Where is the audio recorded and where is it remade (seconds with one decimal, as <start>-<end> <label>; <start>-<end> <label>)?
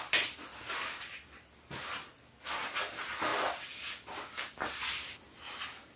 0.0-6.0 recorded